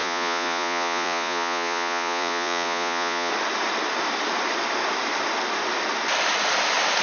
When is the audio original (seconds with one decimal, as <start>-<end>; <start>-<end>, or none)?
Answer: 3.3-7.0